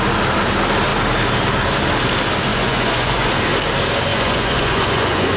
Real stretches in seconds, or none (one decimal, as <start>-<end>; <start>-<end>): 0.0-2.5; 3.3-4.1